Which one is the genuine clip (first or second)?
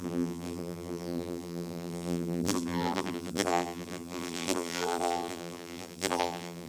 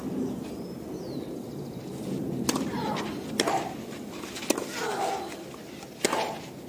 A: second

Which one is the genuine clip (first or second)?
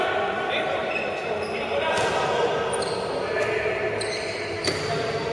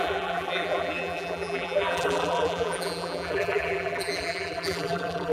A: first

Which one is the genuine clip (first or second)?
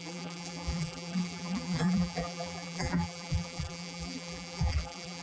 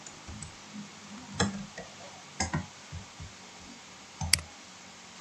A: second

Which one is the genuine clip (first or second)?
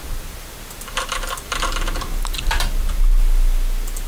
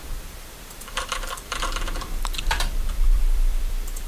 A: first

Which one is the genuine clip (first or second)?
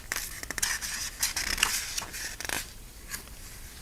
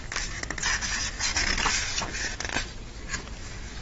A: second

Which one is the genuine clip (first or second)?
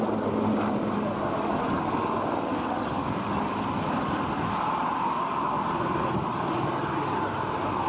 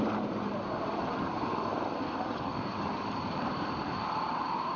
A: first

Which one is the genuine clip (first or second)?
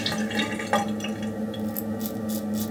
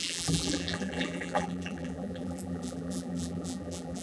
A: first